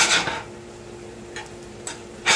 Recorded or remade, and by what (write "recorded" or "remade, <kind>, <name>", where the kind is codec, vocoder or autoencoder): recorded